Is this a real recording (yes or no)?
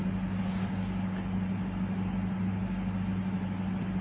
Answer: yes